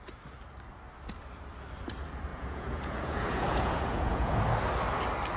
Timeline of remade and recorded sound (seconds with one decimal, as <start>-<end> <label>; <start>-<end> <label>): 0.0-2.3 recorded; 2.3-4.4 remade; 4.4-5.4 recorded